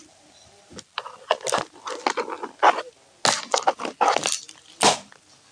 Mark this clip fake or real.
real